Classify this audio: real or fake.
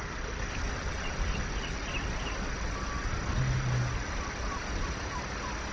real